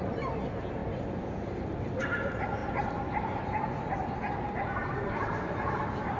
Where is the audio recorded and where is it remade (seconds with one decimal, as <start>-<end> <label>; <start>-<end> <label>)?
0.0-6.2 recorded